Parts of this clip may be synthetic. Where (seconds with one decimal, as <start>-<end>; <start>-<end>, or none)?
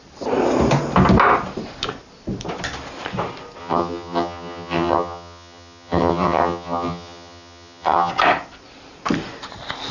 3.6-8.1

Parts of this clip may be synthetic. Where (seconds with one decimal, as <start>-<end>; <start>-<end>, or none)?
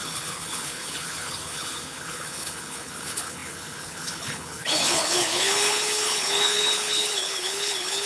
0.0-8.1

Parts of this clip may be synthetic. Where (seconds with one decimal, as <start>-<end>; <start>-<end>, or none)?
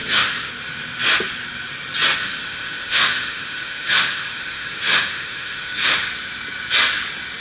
0.0-0.5; 2.2-6.1